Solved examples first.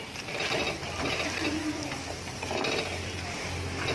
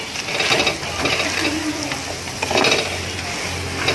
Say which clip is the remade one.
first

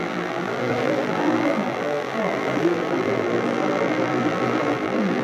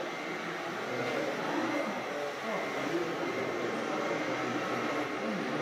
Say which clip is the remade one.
first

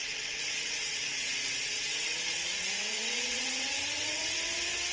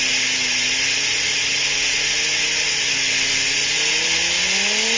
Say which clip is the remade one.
first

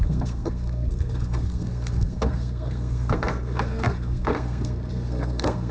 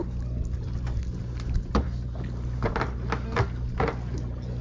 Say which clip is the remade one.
first